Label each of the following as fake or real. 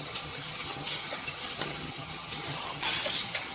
fake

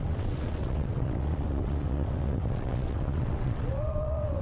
fake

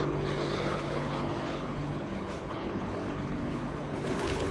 fake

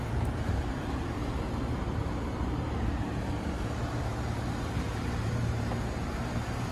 fake